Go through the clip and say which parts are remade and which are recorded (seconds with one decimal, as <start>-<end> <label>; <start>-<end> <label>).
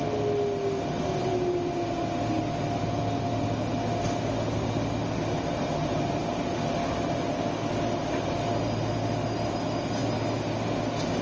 0.0-11.2 recorded